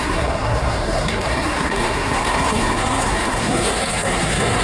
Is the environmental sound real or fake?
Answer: fake